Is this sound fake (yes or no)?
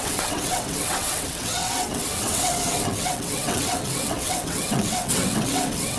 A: yes